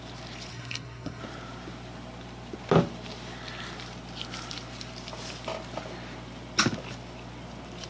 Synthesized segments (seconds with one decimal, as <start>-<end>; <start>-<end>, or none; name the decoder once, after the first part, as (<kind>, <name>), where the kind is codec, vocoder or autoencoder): 0.5-1.2 (codec, SNAC)